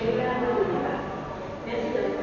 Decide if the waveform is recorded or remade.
recorded